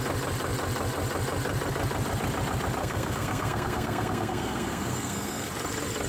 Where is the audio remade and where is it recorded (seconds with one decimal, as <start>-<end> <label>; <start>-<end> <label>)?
0.0-2.8 recorded; 2.8-5.5 remade; 5.5-6.1 recorded